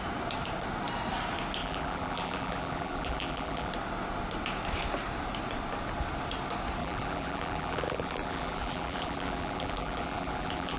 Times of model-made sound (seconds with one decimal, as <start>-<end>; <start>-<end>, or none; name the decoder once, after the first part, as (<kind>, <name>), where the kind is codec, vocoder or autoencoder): 1.6-3.7 (vocoder, BigVGAN v2); 6.8-10.8